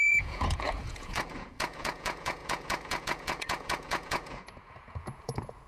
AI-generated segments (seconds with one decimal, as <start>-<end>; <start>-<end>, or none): 0.0-5.7